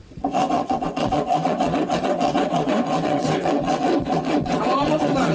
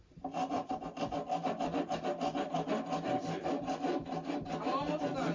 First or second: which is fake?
first